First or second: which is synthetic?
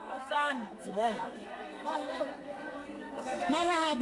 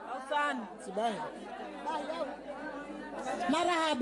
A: first